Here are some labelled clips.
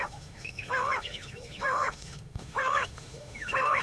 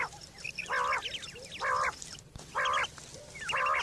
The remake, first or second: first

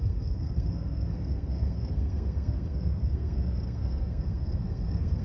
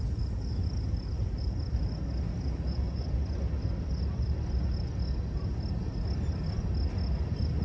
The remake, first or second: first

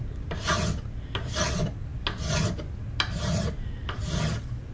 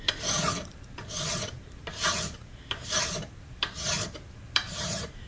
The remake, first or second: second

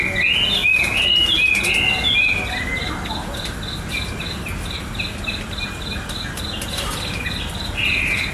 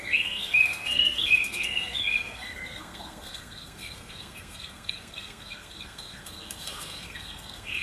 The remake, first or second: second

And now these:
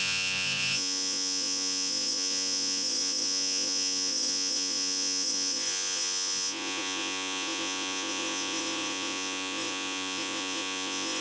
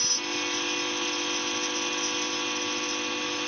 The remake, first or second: first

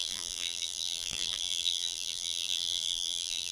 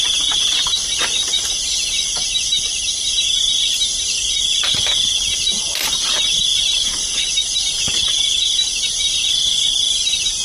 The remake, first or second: first